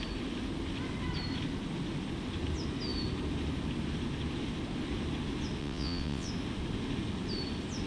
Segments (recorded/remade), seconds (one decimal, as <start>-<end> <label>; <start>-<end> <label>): 0.0-5.6 recorded; 5.6-6.3 remade; 6.3-7.9 recorded